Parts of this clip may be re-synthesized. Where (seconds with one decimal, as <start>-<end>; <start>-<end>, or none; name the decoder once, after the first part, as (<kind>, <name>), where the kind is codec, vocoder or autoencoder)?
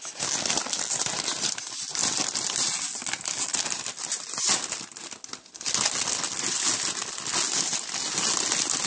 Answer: none